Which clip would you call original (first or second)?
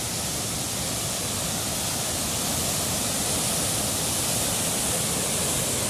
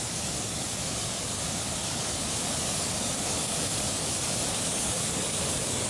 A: first